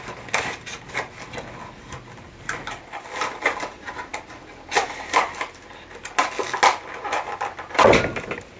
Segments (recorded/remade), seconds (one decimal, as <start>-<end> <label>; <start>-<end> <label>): 0.0-8.6 recorded